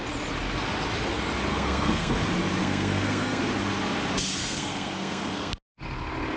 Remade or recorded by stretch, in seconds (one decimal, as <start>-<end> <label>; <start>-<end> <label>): 0.0-1.5 recorded; 1.5-2.1 remade; 2.1-2.6 recorded; 2.6-3.4 remade; 3.4-4.4 recorded; 4.4-5.5 remade; 5.5-6.4 recorded